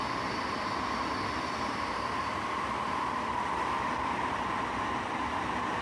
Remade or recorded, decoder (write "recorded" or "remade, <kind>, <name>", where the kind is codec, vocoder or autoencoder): recorded